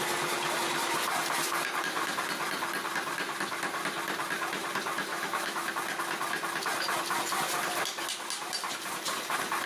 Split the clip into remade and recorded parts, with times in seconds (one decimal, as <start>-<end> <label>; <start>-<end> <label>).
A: 0.0-5.1 recorded; 5.1-5.7 remade; 5.7-9.7 recorded